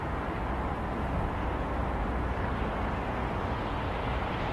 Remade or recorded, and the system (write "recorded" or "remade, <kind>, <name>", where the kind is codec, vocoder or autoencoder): recorded